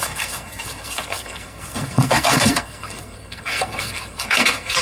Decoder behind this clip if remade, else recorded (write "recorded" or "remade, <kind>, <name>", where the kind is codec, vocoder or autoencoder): remade, codec, SNAC